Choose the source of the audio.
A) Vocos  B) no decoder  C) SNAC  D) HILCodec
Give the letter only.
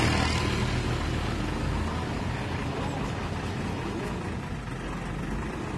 B